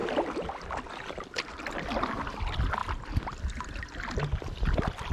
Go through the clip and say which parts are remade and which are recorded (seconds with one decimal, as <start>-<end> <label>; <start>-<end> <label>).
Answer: 0.0-5.1 recorded